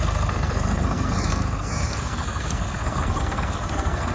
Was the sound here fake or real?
fake